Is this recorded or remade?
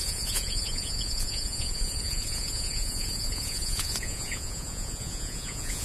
remade